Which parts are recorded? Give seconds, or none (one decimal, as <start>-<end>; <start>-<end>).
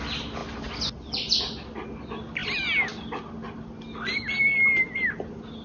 0.0-5.6